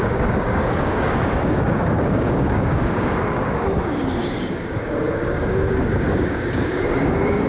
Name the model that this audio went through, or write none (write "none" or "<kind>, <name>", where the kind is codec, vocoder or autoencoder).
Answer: codec, DAC